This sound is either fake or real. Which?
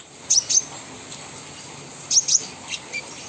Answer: real